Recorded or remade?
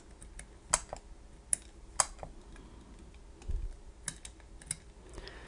recorded